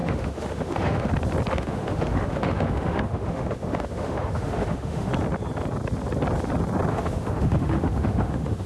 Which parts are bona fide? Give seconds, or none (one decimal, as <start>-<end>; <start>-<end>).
1.1-1.5; 5.1-6.9